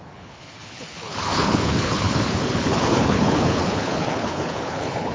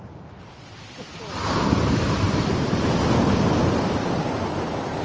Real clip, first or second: second